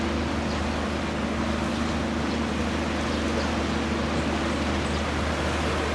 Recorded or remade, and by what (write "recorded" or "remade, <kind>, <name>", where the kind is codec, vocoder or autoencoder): recorded